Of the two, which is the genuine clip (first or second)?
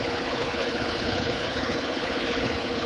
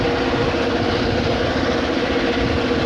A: second